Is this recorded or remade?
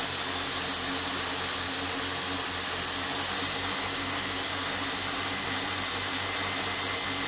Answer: recorded